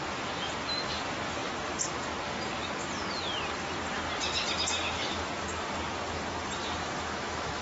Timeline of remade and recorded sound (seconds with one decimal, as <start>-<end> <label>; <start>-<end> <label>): 0.0-6.8 recorded; 6.8-7.6 remade